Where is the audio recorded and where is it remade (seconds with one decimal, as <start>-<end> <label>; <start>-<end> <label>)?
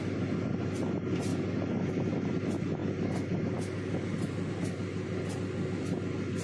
0.0-6.4 recorded